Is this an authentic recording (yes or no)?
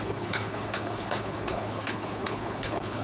no